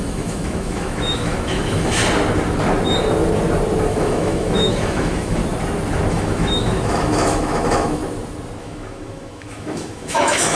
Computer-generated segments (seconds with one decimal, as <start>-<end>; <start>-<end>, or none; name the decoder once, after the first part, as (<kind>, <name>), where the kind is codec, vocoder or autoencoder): 0.0-2.0 (autoencoder, DAC-VAE); 3.9-5.4; 6.1-8.0; 8.6-10.5